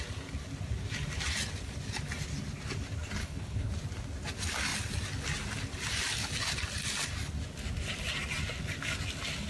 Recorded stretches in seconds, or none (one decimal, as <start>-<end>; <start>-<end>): 0.0-3.2; 3.7-9.5